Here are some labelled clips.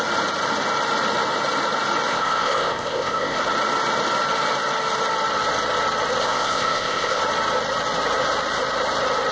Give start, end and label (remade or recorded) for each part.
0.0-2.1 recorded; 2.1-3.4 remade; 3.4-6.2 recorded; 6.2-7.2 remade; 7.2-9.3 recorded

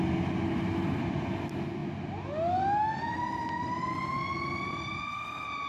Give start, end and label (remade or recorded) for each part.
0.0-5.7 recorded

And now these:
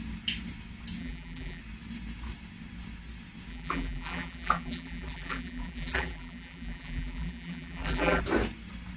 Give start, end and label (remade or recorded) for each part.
0.0-1.0 recorded; 1.0-1.6 remade; 1.6-3.5 recorded; 3.5-8.2 remade; 8.2-9.0 recorded

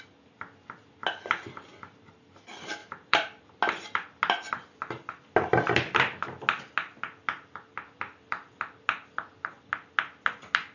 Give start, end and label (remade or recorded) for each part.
0.0-2.8 recorded; 2.8-3.4 remade; 3.4-10.7 recorded

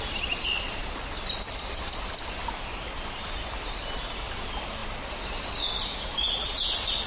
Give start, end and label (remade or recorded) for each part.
0.0-7.1 recorded

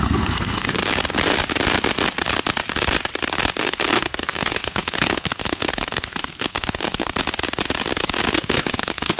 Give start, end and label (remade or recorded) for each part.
0.0-0.8 remade; 0.8-3.6 recorded; 3.6-7.1 remade; 7.1-8.3 recorded; 8.3-9.2 remade

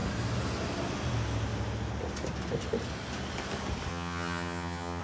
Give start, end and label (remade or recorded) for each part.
0.0-3.9 recorded; 3.9-5.0 remade

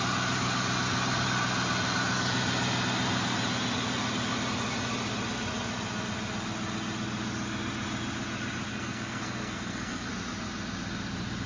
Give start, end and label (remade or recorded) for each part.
0.0-8.7 recorded; 8.7-10.1 remade; 10.1-11.5 recorded